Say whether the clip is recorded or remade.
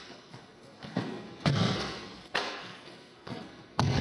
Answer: remade